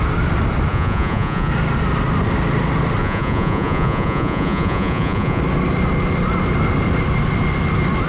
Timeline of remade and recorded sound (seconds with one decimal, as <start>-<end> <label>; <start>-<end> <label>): 0.0-0.7 recorded; 0.7-1.5 remade; 1.5-3.0 recorded; 3.0-5.4 remade; 5.4-8.1 recorded